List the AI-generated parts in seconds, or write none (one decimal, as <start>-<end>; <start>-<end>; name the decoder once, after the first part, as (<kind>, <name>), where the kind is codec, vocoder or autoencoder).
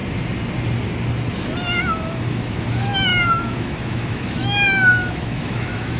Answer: 1.8-6.0 (autoencoder, DAC-VAE)